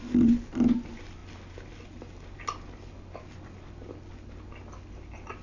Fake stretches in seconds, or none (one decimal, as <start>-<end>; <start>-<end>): none